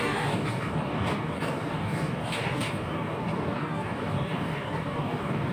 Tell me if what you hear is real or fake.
fake